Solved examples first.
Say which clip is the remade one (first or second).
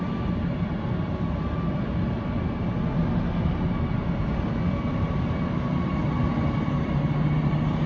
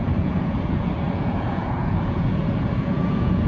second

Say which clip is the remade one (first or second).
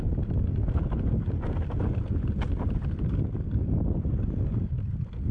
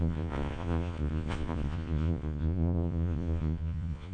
second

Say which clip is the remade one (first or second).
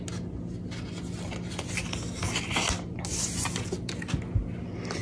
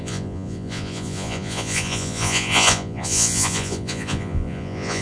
second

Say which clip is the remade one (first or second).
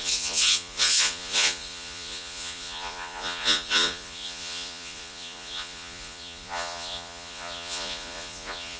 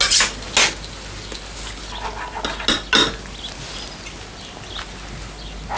first